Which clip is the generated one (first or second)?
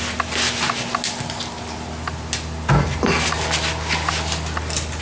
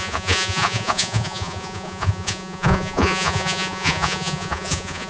second